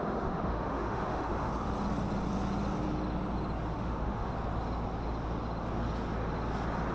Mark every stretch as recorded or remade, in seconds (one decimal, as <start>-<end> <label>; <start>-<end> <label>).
0.0-1.5 remade; 1.5-3.7 recorded; 3.7-4.3 remade; 4.3-6.9 recorded

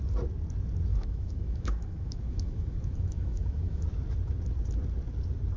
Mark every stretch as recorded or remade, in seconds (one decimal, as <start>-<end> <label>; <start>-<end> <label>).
0.0-0.9 recorded; 0.9-3.8 remade; 3.8-5.6 recorded

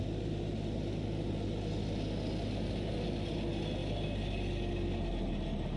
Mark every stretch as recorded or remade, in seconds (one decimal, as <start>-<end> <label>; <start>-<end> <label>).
0.0-5.8 recorded

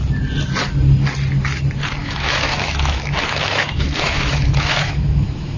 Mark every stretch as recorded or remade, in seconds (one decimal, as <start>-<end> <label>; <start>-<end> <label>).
0.0-2.0 recorded; 2.0-5.6 remade

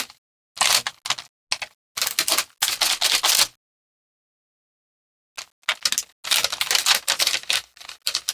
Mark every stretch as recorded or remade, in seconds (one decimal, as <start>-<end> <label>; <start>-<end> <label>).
0.0-8.3 recorded

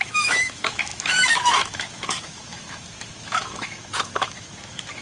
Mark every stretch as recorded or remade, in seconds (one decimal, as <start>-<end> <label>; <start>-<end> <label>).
0.0-5.0 remade

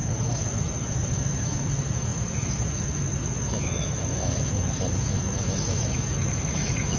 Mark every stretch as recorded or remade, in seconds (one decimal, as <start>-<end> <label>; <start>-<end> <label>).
0.0-7.0 remade